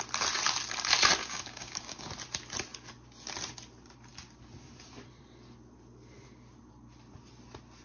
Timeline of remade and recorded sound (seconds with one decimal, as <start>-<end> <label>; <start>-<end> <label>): 0.0-1.2 recorded; 1.2-2.1 remade; 2.1-7.8 recorded